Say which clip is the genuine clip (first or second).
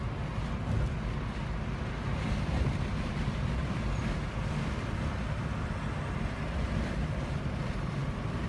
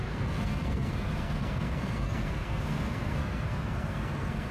first